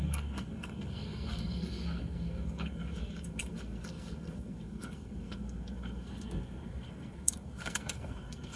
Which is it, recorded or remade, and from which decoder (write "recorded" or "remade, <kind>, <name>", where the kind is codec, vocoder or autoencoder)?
remade, codec, SNAC